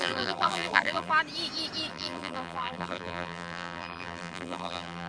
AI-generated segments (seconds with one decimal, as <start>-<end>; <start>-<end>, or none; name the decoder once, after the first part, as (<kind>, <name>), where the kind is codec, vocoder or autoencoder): 0.0-1.1 (vocoder, BigVGAN v2); 1.9-5.1